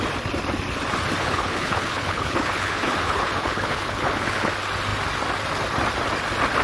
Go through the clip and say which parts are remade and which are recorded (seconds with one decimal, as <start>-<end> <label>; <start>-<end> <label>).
0.0-1.2 recorded; 1.2-4.5 remade; 4.5-6.6 recorded